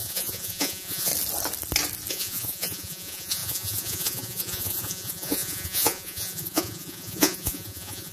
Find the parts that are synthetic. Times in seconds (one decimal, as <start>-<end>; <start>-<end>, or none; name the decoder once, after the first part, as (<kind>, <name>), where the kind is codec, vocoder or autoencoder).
0.0-1.1 (vocoder, Vocos); 2.1-8.1

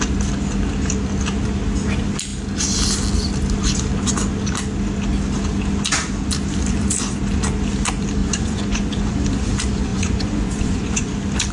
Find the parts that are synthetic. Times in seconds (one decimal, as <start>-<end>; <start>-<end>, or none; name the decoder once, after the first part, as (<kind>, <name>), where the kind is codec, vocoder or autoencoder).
8.2-9.1 (vocoder, Vocos); 9.9-11.1

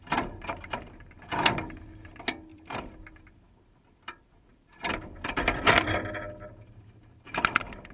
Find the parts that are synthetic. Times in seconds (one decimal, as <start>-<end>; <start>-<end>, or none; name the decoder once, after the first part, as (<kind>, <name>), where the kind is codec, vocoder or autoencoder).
2.5-5.9 (vocoder, BigVGAN v2)

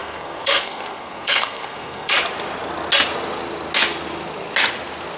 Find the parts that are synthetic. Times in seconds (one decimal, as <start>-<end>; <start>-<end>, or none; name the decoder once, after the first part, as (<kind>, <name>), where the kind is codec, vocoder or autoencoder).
0.0-2.1 (codec, SNAC)

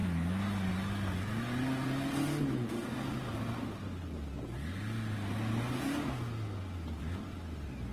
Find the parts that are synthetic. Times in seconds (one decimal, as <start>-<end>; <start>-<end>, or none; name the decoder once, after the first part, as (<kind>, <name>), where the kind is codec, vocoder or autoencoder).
none

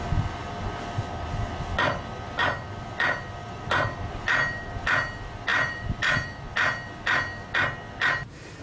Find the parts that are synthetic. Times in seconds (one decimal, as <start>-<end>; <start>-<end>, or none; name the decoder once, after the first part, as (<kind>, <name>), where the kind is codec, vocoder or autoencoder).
3.4-4.2 (vocoder, BigVGAN v2); 5.5-6.4